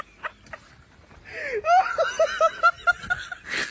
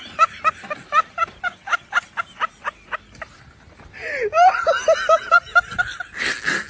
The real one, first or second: first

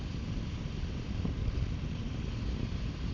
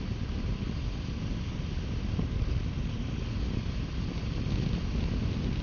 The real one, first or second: second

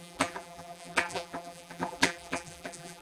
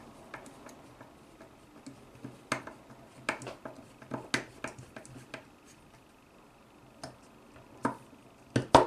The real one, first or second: second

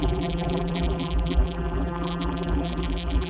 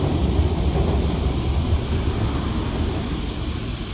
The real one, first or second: second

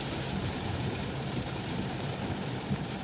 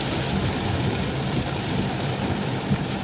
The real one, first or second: second